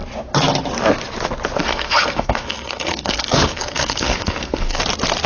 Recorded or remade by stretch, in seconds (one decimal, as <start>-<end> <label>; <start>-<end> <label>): 0.0-1.6 recorded; 1.6-4.8 remade; 4.8-5.3 recorded